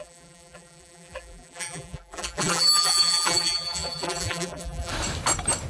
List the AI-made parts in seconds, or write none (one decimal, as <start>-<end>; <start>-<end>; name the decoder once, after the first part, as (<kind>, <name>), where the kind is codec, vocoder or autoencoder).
0.0-4.9 (vocoder, BigVGAN v2)